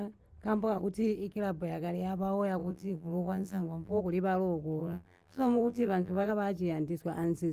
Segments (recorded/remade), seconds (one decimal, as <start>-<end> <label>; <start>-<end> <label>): 0.0-2.6 recorded; 2.6-4.0 remade; 4.0-4.8 recorded; 4.8-6.3 remade; 6.3-7.5 recorded